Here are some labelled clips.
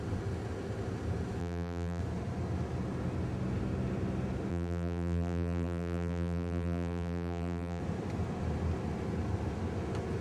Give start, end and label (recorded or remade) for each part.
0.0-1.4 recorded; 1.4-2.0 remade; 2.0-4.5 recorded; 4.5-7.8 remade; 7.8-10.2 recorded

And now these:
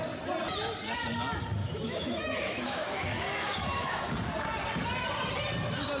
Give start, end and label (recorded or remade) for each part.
0.0-1.6 recorded; 1.6-4.1 remade; 4.1-6.0 recorded